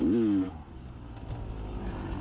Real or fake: real